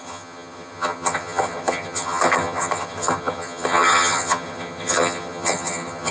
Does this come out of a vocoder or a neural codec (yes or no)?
yes